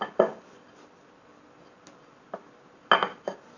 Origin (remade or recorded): recorded